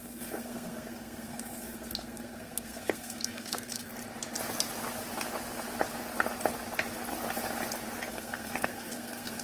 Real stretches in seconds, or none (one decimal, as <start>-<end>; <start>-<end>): 3.9-8.1